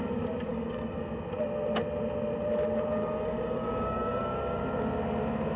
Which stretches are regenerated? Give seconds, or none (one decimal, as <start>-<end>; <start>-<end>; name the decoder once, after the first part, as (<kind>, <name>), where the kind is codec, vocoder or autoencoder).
0.5-1.0 (codec, DAC); 3.0-4.6